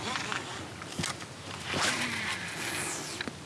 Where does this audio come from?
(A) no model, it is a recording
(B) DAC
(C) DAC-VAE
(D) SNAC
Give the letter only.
A